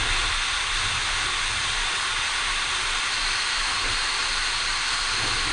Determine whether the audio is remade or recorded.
recorded